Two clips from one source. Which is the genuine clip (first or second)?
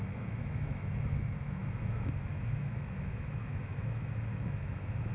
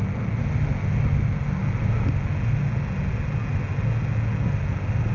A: second